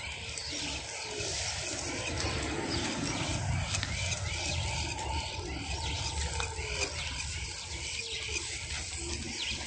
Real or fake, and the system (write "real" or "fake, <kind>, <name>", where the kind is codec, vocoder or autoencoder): real